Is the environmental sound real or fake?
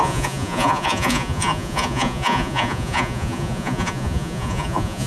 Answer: fake